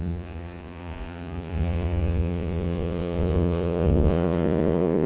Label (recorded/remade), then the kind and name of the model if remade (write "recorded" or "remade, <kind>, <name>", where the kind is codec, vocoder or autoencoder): remade, vocoder, Vocos